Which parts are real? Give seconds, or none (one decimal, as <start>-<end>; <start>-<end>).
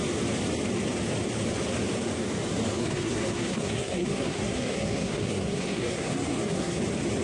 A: 0.0-2.8; 6.8-7.2